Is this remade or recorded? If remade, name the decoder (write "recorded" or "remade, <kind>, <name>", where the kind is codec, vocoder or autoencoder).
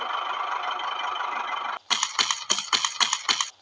recorded